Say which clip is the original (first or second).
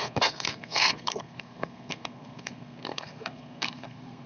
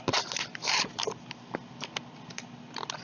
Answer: second